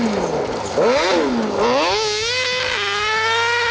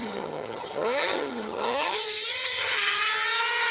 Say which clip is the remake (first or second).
second